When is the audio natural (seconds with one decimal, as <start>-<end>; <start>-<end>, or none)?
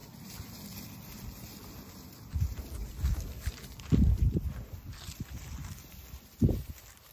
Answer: 0.0-7.1